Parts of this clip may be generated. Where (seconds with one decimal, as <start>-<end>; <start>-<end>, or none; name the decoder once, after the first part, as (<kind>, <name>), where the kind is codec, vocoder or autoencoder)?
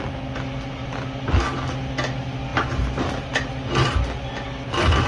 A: none